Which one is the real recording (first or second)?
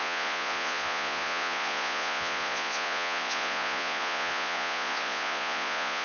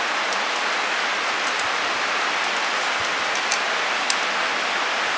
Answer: second